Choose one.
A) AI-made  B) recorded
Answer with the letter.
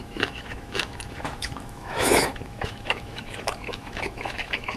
A